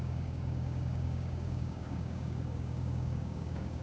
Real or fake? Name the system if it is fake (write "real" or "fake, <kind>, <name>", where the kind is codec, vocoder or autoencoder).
fake, codec, DAC